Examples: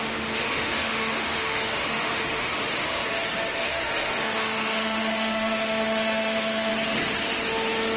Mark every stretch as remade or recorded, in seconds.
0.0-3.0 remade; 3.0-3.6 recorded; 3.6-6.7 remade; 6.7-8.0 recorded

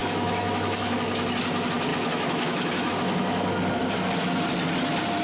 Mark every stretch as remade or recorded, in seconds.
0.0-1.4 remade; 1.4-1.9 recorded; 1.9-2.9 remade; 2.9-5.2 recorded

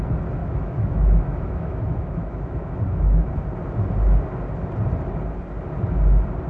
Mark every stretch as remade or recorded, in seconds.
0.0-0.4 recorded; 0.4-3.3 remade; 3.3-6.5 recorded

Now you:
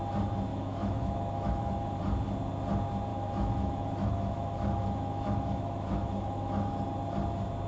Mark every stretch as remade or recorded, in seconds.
0.0-0.5 recorded; 0.5-2.0 remade; 2.0-3.1 recorded; 3.1-6.9 remade; 6.9-7.7 recorded

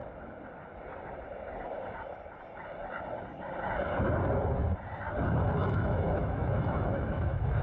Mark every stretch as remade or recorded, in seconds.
0.0-5.6 recorded; 5.6-7.6 remade